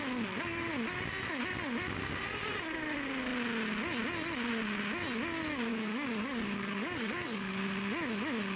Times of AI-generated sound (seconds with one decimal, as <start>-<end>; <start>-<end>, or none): 5.7-7.6